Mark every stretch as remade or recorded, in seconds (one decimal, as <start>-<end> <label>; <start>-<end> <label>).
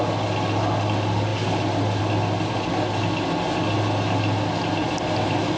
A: 0.0-5.6 recorded